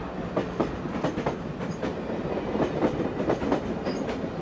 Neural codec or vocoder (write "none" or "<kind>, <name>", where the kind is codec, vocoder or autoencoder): none